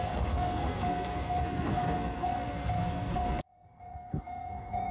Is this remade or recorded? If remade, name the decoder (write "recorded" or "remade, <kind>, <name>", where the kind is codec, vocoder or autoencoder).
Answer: remade, codec, SNAC